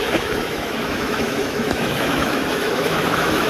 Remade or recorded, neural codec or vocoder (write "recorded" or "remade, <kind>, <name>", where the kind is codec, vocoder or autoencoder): remade, autoencoder, DAC-VAE